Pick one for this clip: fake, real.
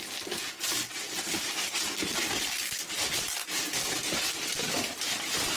real